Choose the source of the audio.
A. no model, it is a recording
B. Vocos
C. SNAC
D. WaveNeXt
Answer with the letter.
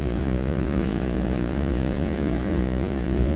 B